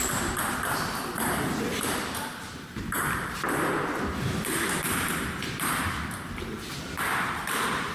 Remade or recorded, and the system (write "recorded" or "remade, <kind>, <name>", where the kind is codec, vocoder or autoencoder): remade, vocoder, BigVGAN v2